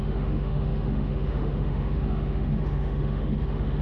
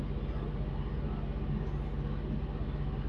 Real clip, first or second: second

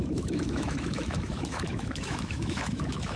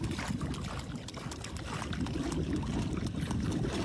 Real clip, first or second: second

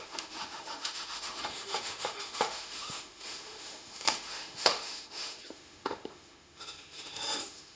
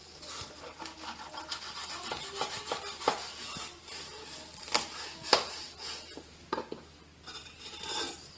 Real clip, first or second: second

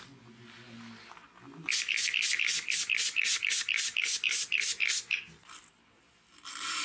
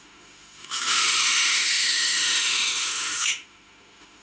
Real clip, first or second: first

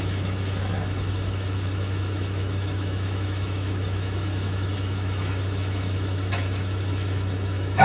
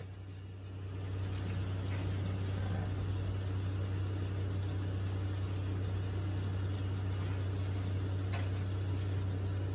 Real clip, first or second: second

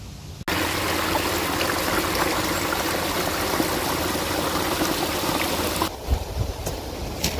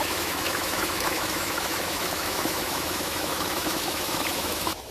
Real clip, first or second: first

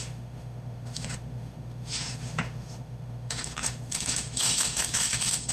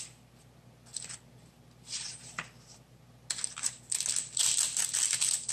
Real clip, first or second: second